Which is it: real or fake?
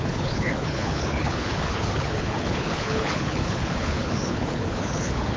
fake